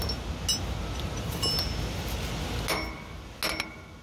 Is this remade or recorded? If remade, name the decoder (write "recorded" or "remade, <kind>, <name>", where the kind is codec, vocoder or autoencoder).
recorded